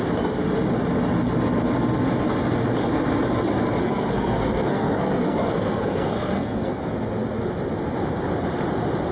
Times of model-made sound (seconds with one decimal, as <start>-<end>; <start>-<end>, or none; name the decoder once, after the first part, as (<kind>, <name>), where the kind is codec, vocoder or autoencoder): 3.8-6.8 (codec, SNAC)